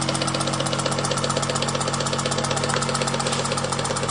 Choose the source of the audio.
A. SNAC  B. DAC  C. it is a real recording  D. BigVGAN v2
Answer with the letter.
C